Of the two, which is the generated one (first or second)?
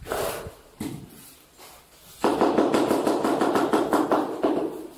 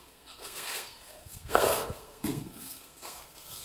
second